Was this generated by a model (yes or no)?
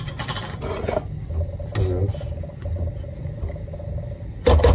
no